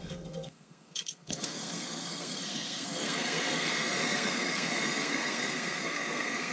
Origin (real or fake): fake